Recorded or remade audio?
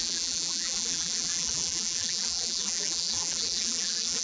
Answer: remade